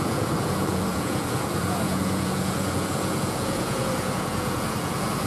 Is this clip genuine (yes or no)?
no